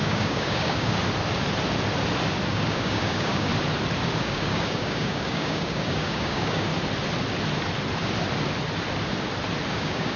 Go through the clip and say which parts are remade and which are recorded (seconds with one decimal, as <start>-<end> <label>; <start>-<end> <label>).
0.0-1.0 remade; 1.0-2.5 recorded; 2.5-3.5 remade; 3.5-4.2 recorded; 4.2-6.7 remade; 6.7-9.7 recorded; 9.7-10.2 remade